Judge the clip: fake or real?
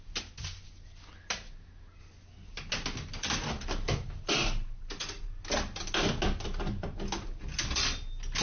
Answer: real